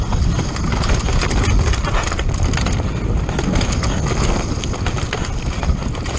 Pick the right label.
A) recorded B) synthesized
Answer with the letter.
A